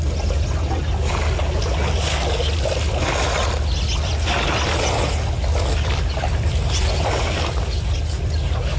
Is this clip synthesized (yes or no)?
no